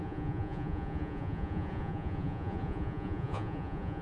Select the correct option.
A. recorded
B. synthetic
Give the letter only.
B